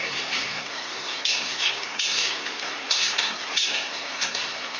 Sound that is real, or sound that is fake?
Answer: fake